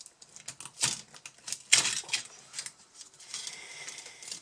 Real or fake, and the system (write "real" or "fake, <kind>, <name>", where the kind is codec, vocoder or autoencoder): real